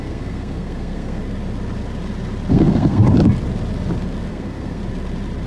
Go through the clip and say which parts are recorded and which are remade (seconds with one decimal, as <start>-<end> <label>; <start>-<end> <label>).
0.0-1.2 remade; 1.2-2.5 recorded; 2.5-3.0 remade; 3.0-4.3 recorded; 4.3-4.8 remade; 4.8-5.5 recorded